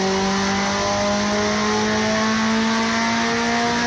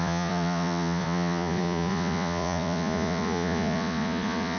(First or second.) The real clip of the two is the first